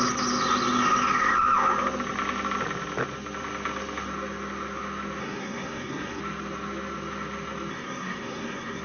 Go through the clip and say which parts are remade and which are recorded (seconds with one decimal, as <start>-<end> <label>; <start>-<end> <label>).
0.0-5.2 recorded; 5.2-6.2 remade; 6.2-7.7 recorded; 7.7-8.8 remade